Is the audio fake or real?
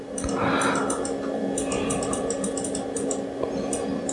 real